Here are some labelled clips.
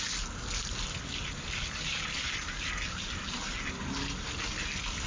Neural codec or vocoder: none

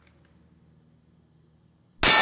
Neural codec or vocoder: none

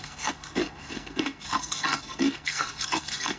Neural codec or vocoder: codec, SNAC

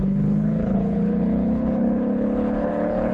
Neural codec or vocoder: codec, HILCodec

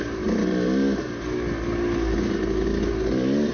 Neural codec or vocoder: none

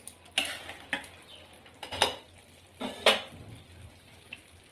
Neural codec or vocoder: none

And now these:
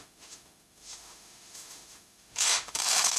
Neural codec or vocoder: autoencoder, DAC-VAE